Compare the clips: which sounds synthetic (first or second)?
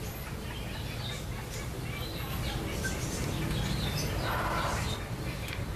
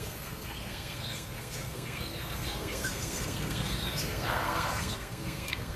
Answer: second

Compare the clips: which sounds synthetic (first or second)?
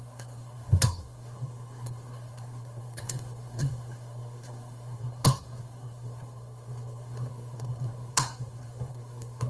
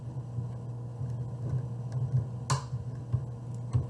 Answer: first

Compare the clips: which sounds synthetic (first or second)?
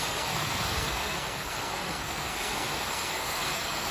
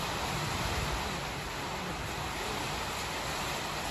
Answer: first